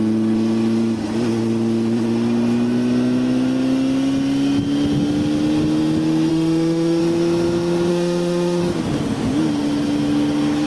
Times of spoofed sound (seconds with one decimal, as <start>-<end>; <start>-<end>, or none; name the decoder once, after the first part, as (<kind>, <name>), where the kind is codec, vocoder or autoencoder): 6.3-7.0 (autoencoder, DAC-VAE); 7.9-8.6